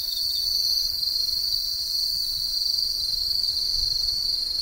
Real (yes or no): yes